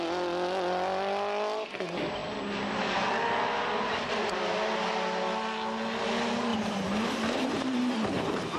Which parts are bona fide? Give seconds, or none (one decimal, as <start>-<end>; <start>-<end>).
0.0-6.5